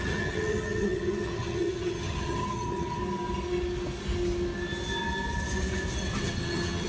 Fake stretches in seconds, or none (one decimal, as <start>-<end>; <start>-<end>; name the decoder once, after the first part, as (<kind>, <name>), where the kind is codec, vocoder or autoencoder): 0.0-3.0 (vocoder, HiFi-GAN); 6.1-6.9